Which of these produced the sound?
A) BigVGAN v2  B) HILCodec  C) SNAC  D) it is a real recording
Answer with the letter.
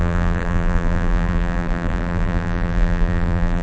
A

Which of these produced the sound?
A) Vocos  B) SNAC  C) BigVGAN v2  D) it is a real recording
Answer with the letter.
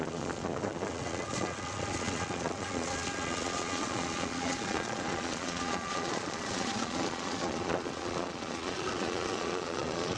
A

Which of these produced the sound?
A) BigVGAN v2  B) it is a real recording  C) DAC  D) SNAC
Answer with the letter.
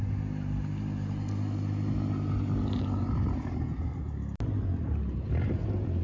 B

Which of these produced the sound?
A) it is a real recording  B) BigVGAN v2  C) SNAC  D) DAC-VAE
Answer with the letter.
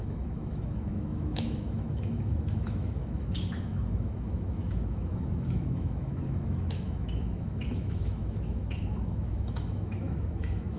D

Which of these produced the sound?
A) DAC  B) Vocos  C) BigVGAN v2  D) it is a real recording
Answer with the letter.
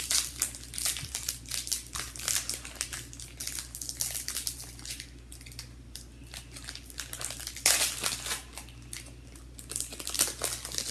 D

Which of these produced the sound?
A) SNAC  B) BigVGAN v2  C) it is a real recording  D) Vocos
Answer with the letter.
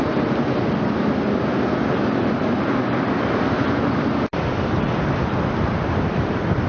B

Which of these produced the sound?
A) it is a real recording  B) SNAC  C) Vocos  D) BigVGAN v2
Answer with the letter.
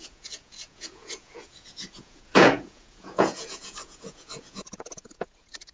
C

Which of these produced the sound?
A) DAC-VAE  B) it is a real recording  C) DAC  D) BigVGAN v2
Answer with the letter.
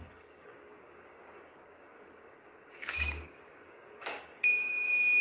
C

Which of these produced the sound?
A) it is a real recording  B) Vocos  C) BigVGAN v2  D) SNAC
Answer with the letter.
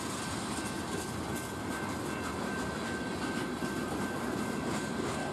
A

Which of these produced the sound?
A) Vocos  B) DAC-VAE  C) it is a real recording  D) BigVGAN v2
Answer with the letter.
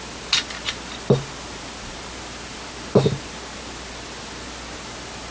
C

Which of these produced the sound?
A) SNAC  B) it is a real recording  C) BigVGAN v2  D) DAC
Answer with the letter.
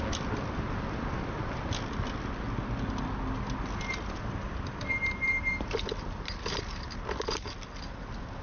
B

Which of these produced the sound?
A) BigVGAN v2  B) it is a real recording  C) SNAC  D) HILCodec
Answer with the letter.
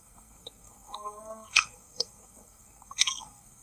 C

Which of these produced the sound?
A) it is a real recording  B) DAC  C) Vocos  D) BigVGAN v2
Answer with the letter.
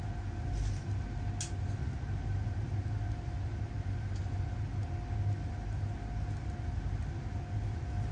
A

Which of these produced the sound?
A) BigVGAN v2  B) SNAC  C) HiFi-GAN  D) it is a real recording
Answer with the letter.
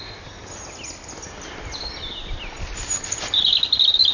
D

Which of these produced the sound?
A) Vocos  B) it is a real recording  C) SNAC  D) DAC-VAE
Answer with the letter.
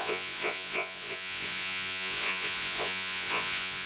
A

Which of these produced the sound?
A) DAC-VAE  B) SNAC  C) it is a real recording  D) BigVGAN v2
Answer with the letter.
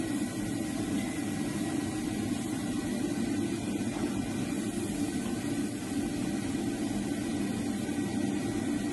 C